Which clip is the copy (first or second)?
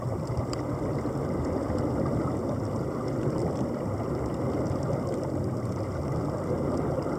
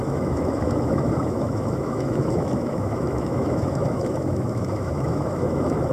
second